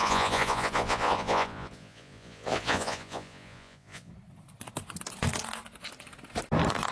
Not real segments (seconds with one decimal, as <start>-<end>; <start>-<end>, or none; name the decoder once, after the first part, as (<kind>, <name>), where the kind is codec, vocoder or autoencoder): 0.0-4.1 (vocoder, Vocos)